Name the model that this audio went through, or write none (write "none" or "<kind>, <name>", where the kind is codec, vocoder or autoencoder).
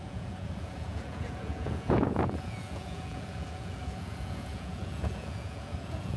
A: vocoder, Vocos